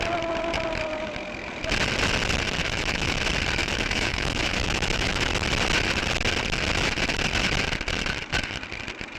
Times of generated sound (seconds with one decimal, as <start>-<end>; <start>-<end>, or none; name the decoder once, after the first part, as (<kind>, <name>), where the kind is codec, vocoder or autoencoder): 2.6-3.2 (autoencoder, DAC-VAE); 3.6-5.3